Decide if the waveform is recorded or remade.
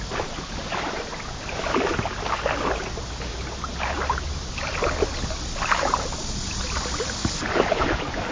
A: recorded